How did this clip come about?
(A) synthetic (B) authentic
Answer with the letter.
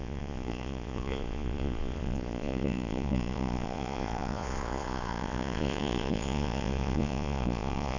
A